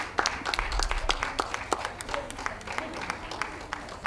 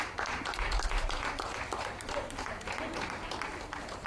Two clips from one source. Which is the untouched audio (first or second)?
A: first